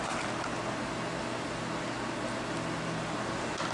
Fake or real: real